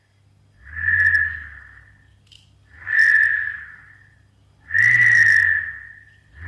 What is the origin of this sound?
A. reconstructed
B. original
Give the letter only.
B